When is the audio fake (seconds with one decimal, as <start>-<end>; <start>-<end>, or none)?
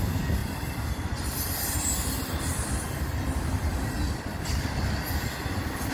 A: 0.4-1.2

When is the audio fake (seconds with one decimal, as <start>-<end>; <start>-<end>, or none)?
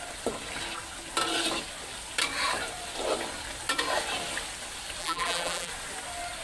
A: 5.0-5.7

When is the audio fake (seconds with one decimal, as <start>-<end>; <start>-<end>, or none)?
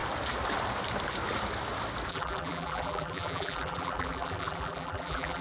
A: 2.1-5.4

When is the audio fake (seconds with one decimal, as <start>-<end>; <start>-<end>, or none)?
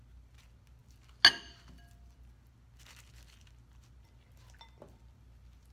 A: none